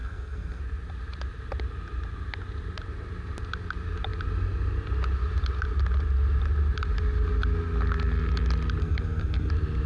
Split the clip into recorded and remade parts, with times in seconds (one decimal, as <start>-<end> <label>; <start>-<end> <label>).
0.0-0.6 remade; 0.6-8.8 recorded; 8.8-9.5 remade; 9.5-9.9 recorded